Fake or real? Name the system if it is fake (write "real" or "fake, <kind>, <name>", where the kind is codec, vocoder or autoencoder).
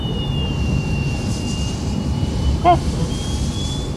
real